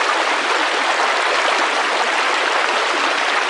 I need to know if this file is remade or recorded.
recorded